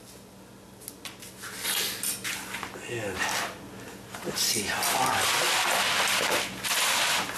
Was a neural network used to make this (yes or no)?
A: no